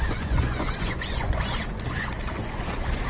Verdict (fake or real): fake